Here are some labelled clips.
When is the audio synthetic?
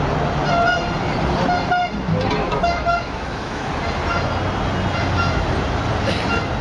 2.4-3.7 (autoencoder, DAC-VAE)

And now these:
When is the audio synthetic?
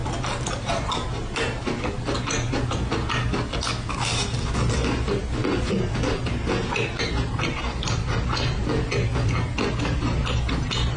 none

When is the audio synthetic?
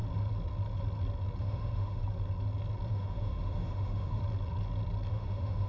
1.4-2.0 (autoencoder, DAC-VAE); 2.9-4.2; 5.1-5.7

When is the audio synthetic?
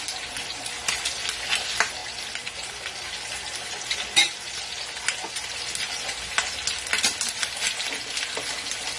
none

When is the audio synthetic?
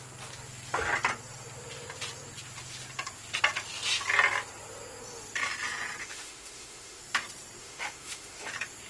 6.0-7.0 (autoencoder, DAC-VAE); 7.6-8.5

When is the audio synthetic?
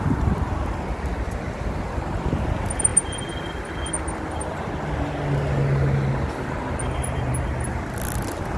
none